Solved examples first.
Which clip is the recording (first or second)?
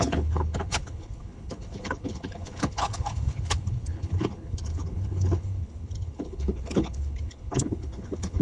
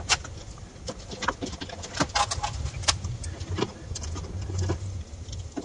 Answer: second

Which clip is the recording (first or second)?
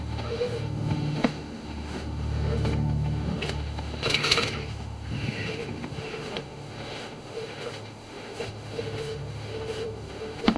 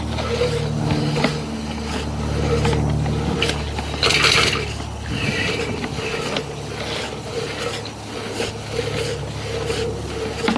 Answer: second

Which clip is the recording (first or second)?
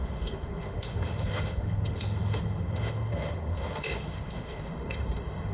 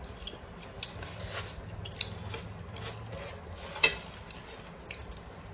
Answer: second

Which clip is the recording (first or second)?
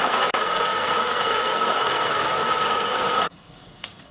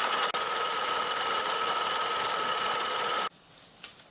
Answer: second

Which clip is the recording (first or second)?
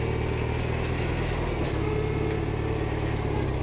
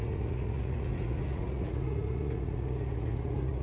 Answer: first